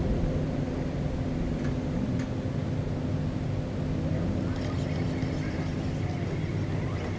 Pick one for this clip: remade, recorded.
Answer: recorded